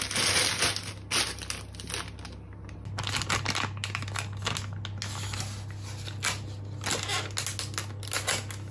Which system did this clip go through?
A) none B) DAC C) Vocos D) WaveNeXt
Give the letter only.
A